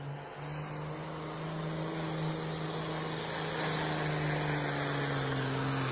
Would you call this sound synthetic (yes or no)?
no